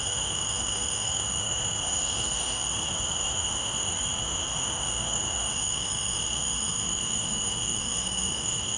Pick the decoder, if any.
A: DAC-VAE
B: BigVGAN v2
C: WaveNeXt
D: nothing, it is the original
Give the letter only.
A